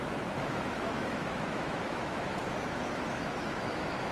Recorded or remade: remade